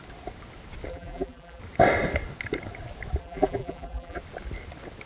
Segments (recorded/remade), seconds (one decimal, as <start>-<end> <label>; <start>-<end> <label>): 0.0-0.9 recorded; 0.9-1.6 remade; 1.6-3.2 recorded; 3.2-4.2 remade; 4.2-5.1 recorded